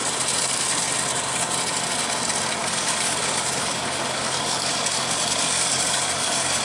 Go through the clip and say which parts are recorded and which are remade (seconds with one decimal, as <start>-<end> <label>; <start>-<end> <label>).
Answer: 0.0-2.6 recorded; 2.6-6.6 remade